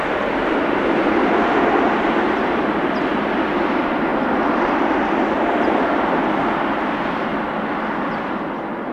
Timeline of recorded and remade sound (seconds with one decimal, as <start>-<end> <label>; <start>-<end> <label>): 0.0-4.1 remade; 4.1-4.7 recorded; 4.7-7.3 remade; 7.3-8.0 recorded; 8.0-8.9 remade